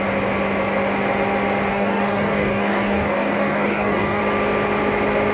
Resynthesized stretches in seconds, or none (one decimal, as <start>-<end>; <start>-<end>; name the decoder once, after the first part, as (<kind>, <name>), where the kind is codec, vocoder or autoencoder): 1.7-4.2 (codec, DAC)